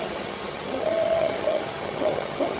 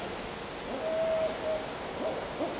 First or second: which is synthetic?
first